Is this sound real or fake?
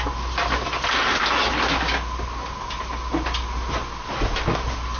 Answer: real